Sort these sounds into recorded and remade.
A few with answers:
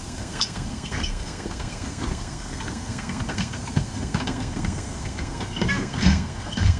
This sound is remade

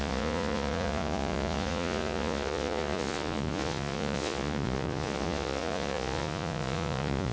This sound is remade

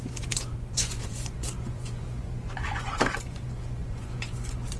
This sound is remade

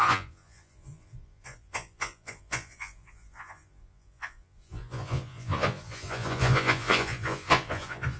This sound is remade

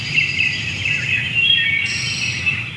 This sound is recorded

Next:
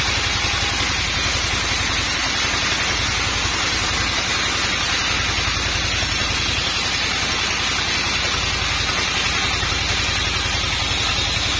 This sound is recorded